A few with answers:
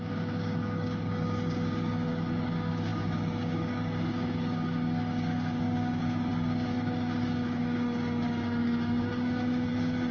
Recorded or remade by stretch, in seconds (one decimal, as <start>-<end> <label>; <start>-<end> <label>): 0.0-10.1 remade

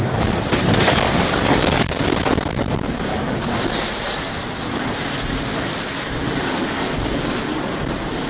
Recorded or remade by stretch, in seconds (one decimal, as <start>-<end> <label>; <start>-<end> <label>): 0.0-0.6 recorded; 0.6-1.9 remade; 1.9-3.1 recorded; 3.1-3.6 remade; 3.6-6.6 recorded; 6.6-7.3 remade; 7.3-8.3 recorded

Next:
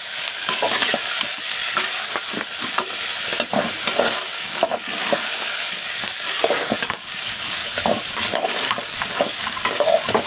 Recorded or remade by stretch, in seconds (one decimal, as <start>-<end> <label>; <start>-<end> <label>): 0.0-2.2 remade; 2.2-4.0 recorded; 4.0-10.3 remade